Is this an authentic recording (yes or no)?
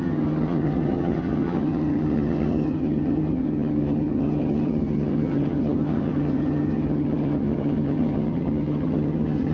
no